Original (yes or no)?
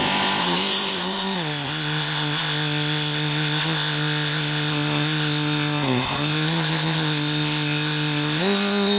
no